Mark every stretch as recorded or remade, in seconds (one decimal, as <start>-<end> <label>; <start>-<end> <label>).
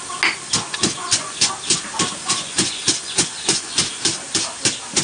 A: 0.0-0.7 recorded; 0.7-1.5 remade; 1.5-2.2 recorded; 2.2-4.0 remade; 4.0-5.0 recorded